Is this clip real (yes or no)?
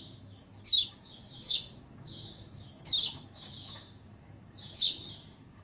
no